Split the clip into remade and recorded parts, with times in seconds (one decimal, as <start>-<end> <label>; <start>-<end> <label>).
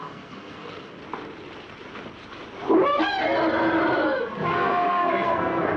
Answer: 0.0-1.0 remade; 1.0-4.5 recorded; 4.5-5.8 remade